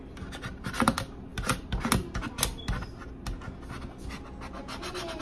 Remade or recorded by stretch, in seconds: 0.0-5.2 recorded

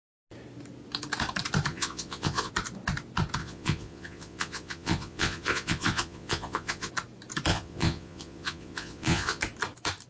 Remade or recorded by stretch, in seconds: 0.0-1.7 recorded; 1.7-2.5 remade; 2.5-3.4 recorded; 3.4-6.9 remade; 6.9-7.5 recorded; 7.5-9.4 remade; 9.4-10.1 recorded

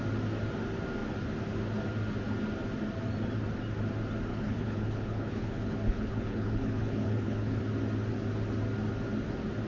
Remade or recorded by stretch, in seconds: 0.0-4.3 recorded; 4.3-7.6 remade; 7.6-9.7 recorded

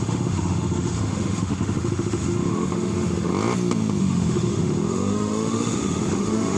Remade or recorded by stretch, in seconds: 0.0-3.3 remade; 3.3-4.0 recorded; 4.0-6.6 remade

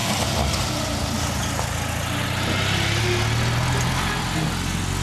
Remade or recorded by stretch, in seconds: 0.0-5.0 recorded